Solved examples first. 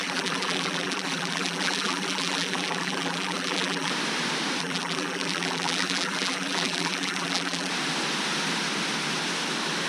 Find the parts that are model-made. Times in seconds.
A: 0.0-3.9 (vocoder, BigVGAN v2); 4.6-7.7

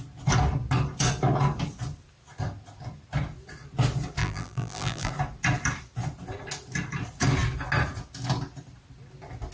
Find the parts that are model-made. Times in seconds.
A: 4.2-5.1 (vocoder, BigVGAN v2)